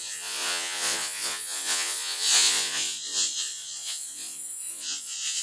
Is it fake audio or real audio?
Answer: fake